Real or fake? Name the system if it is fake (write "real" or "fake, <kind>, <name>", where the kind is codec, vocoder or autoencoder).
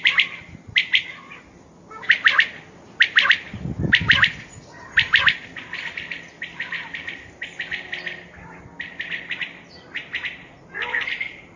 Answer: real